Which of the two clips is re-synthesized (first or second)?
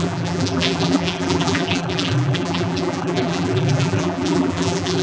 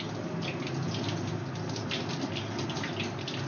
first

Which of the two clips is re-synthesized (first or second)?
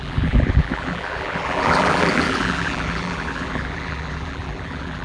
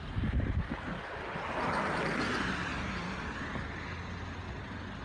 first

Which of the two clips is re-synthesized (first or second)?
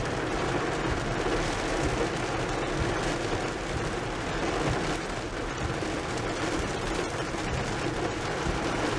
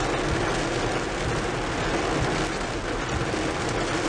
first